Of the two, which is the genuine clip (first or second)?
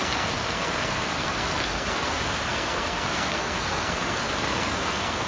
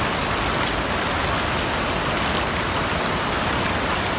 second